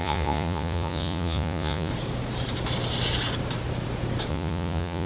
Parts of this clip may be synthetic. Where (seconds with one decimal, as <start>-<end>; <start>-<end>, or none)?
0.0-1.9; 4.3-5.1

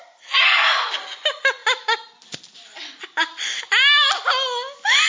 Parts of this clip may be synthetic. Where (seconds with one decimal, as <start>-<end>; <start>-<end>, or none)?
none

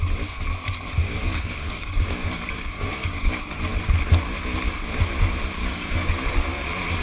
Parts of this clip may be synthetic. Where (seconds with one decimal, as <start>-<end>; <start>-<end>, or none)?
1.0-3.3; 5.6-6.1